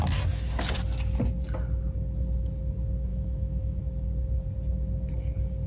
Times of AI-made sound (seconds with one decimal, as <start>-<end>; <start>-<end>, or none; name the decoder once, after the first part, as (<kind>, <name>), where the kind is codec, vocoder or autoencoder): 3.1-3.8 (autoencoder, DAC-VAE)

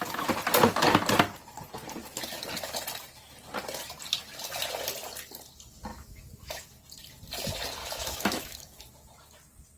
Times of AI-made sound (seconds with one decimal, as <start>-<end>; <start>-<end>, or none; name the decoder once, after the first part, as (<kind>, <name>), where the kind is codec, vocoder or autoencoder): 5.9-6.7 (autoencoder, DAC-VAE); 7.8-8.8